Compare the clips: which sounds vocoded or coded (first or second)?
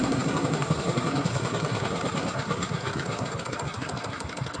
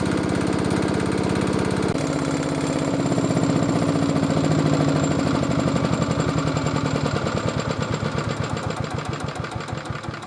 first